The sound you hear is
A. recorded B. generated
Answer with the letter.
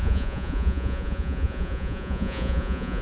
B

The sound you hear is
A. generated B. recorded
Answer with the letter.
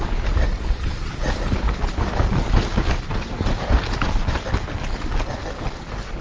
B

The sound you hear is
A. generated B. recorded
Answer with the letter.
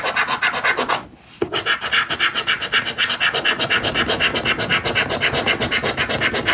B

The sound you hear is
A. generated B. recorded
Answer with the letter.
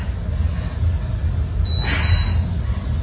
B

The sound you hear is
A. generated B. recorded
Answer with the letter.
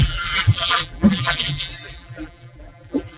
A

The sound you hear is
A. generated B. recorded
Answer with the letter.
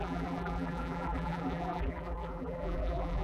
A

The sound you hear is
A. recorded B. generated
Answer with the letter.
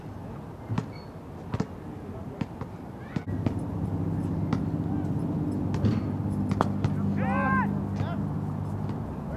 A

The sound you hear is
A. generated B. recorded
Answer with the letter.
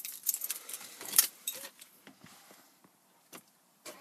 A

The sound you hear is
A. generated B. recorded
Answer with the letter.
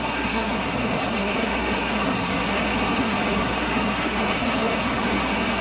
A